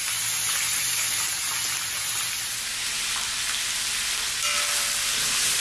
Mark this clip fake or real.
real